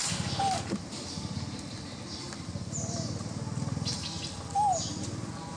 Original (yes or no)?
yes